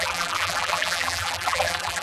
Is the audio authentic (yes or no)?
no